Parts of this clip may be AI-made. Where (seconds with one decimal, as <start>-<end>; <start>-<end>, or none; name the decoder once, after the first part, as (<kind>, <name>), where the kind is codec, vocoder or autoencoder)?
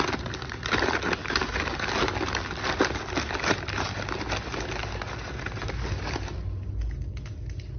none